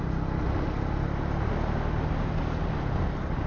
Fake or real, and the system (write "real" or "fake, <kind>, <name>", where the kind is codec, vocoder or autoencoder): real